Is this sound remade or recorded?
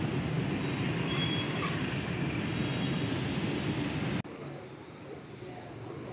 recorded